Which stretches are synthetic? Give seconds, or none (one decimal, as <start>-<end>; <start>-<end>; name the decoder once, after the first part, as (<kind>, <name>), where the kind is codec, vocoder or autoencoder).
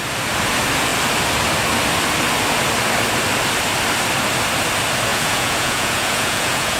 5.1-6.8 (vocoder, Vocos)